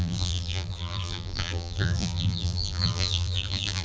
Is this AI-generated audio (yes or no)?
yes